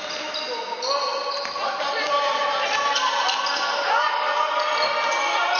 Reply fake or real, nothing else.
real